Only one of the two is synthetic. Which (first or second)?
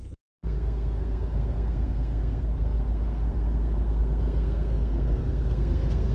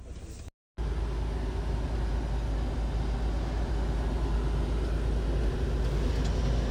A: first